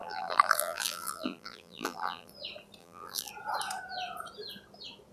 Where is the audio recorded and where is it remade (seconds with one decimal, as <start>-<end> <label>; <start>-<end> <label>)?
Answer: 0.0-2.3 remade; 2.3-2.8 recorded; 2.8-3.3 remade; 3.3-5.1 recorded

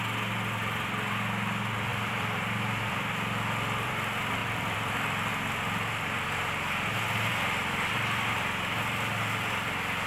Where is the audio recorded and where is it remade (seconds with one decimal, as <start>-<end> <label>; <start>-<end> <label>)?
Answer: 0.0-1.9 recorded; 1.9-3.9 remade; 3.9-4.4 recorded; 4.4-5.3 remade; 5.3-10.1 recorded

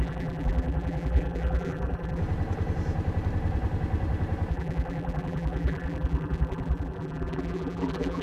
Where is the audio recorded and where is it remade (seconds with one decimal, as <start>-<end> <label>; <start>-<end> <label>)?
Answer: 0.0-2.2 remade; 2.2-4.5 recorded; 4.5-8.2 remade

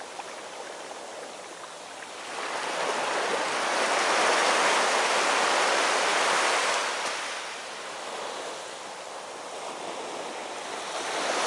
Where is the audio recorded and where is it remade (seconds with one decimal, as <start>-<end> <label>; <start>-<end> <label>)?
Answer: 0.0-11.5 recorded

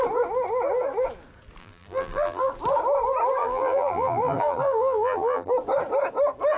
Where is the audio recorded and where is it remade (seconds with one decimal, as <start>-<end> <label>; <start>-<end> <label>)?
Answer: 0.0-1.6 recorded; 1.6-2.5 remade; 2.5-3.4 recorded; 3.4-5.5 remade; 5.5-6.6 recorded